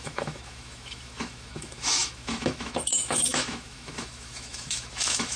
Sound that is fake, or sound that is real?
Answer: fake